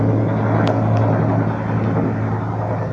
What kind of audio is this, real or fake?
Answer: real